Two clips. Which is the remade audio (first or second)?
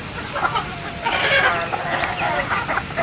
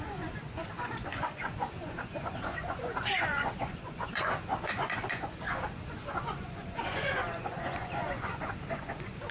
second